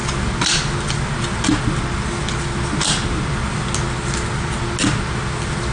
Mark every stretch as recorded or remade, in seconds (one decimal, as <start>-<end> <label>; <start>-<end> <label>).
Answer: 0.0-5.7 recorded